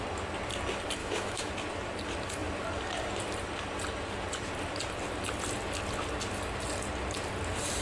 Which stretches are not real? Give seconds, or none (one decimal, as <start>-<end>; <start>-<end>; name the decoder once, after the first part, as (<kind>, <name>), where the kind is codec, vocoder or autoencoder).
1.0-1.5 (autoencoder, DAC-VAE)